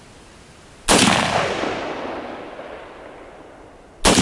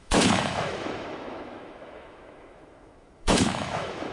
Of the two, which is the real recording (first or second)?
first